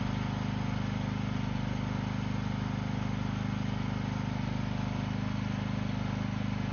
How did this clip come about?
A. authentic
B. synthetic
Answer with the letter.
A